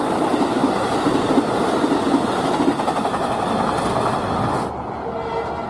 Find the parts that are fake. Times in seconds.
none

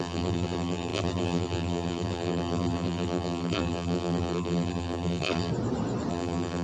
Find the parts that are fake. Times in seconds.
0.0-5.5 (vocoder, BigVGAN v2); 6.1-6.6